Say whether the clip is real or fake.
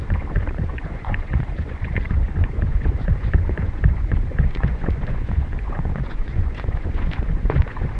fake